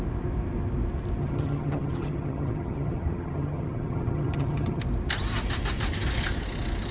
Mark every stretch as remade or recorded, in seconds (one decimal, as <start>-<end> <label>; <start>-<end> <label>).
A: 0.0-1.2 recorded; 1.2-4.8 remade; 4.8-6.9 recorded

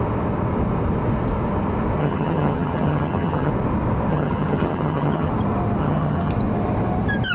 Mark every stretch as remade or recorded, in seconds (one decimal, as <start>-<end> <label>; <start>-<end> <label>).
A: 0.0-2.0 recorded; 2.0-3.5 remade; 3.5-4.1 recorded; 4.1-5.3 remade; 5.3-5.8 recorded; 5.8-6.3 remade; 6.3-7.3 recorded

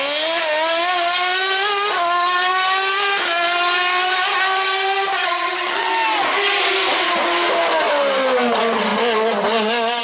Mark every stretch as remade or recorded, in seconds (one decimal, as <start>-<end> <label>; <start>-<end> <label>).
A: 0.0-5.2 recorded; 5.2-5.9 remade; 5.9-10.0 recorded

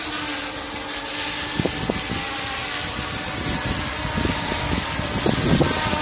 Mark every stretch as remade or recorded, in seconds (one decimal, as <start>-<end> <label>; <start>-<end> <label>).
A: 0.0-6.0 recorded